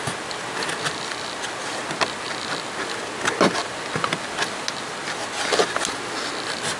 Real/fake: real